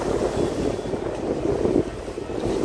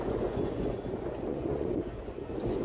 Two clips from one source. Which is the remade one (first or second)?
second